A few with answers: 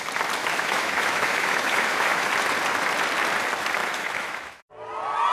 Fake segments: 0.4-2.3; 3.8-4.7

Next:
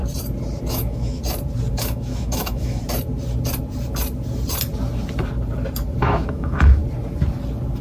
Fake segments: 0.7-1.2; 1.7-2.8; 6.0-6.8

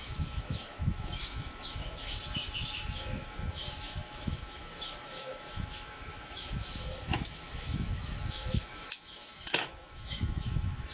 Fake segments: 0.0-10.9

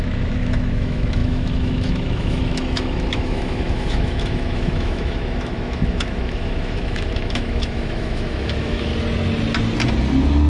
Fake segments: 0.0-8.9

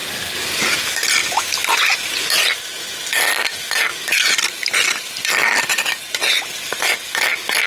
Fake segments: none